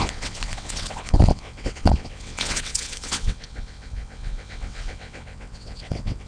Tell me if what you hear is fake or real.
fake